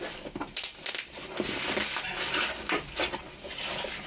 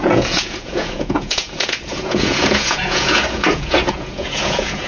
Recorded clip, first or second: first